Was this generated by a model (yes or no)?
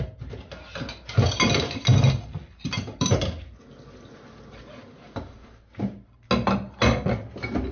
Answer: no